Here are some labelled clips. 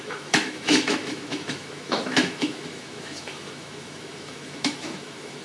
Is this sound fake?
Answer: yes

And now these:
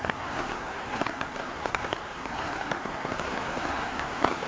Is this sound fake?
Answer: yes